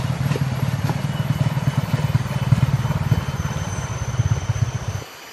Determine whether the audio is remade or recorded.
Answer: remade